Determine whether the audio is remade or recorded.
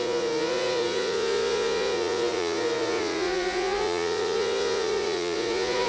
remade